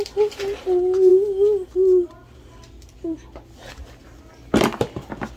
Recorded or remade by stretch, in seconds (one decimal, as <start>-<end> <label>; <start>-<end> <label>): 0.0-5.4 recorded